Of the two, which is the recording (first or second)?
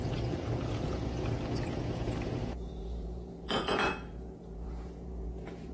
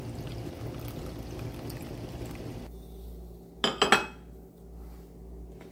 second